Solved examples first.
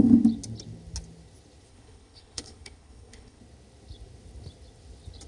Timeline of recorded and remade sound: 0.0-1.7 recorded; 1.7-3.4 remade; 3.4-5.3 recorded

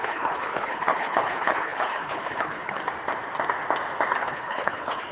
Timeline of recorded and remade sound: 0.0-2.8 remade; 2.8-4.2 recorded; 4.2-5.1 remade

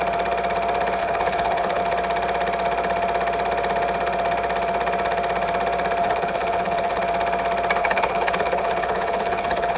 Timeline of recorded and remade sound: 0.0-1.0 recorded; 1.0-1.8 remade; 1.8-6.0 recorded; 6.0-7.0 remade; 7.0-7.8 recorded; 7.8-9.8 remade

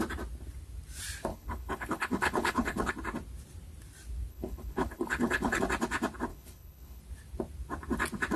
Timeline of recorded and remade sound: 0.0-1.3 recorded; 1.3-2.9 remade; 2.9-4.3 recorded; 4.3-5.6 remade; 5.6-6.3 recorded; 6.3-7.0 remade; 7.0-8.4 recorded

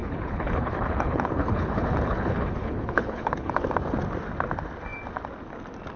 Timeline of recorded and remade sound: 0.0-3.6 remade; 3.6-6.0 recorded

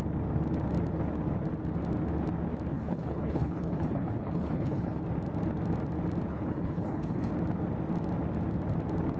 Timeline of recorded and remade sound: 0.0-2.7 recorded; 2.7-5.0 remade; 5.0-6.3 recorded; 6.3-7.3 remade; 7.3-9.2 recorded

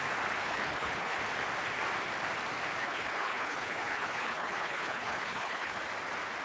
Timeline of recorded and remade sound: 0.0-0.4 recorded; 0.4-1.2 remade; 1.2-2.8 recorded; 2.8-5.8 remade; 5.8-6.4 recorded

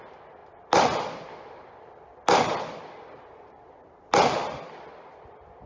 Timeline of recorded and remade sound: 0.0-5.7 recorded